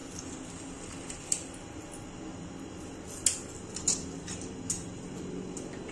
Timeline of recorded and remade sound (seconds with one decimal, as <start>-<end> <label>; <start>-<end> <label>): 0.0-5.9 recorded